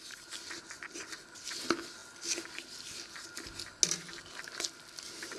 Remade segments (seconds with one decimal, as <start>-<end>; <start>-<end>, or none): none